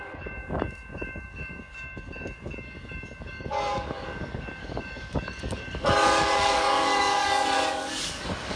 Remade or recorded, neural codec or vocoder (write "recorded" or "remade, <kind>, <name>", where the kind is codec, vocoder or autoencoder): remade, codec, DAC